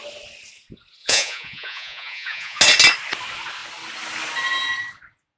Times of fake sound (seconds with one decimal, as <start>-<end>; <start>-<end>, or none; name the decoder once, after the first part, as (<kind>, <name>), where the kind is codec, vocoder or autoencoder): 1.0-2.6 (vocoder, Vocos)